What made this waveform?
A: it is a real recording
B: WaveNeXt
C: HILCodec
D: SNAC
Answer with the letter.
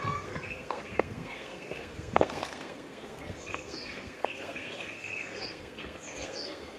D